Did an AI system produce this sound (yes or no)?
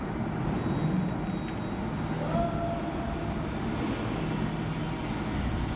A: no